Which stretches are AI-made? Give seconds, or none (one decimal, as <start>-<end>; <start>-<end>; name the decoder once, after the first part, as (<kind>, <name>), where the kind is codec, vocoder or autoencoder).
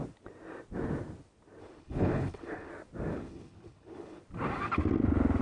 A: 1.6-2.7 (codec, HILCodec); 3.1-4.2